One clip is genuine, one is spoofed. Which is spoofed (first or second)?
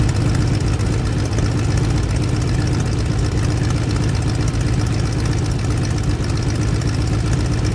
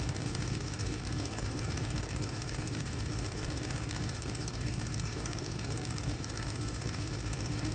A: second